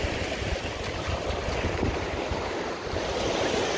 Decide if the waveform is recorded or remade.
recorded